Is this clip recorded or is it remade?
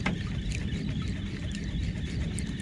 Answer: recorded